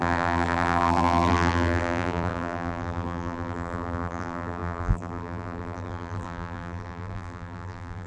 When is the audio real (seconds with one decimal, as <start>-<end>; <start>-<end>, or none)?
none